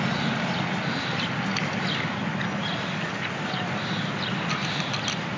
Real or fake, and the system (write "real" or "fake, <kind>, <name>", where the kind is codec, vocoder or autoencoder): real